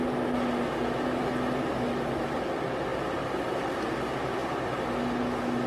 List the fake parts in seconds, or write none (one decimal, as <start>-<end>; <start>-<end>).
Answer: none